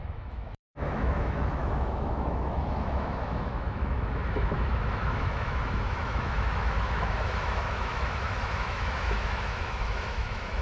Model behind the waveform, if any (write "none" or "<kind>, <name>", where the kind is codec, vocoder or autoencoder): autoencoder, DAC-VAE